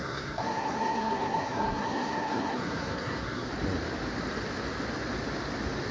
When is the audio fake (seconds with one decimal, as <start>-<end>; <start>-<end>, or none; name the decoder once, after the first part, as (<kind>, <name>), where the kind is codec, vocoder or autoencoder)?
0.0-3.5 (codec, SNAC)